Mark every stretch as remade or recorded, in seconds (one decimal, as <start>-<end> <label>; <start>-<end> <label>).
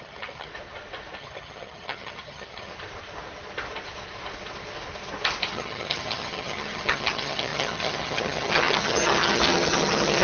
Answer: 0.0-0.5 remade; 0.5-1.2 recorded; 1.2-2.7 remade; 2.7-5.5 recorded; 5.5-10.2 remade